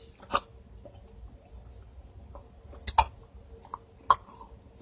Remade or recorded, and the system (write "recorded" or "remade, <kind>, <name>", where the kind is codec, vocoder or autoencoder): recorded